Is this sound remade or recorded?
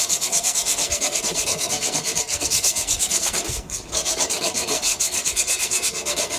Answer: remade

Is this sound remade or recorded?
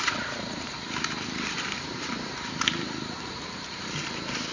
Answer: remade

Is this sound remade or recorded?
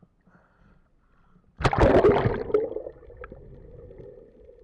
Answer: recorded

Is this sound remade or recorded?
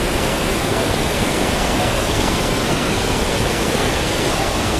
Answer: remade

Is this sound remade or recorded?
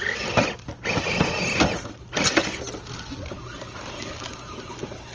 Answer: recorded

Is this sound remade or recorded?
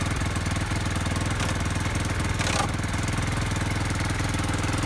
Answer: recorded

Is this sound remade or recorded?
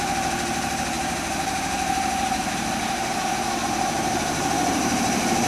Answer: remade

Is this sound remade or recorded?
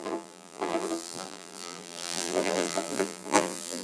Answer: remade